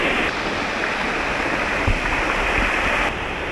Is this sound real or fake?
real